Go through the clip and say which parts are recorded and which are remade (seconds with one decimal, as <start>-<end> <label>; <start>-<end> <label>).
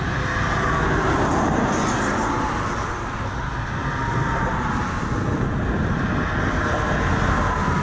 0.0-7.8 recorded